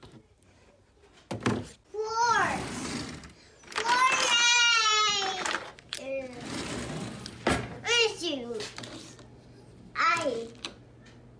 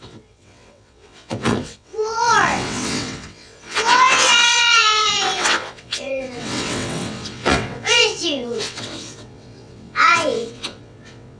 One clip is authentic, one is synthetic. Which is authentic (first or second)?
first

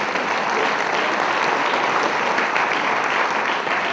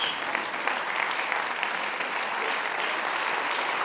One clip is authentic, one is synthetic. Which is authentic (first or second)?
first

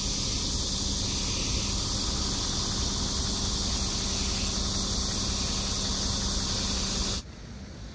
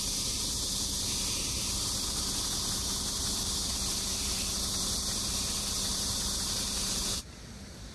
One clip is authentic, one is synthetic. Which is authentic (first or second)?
first